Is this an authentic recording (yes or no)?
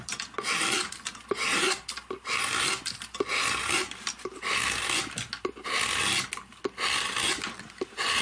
yes